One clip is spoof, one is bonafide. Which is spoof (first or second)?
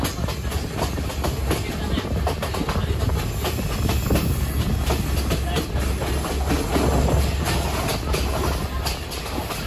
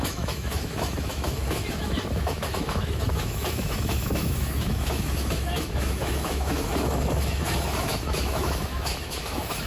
second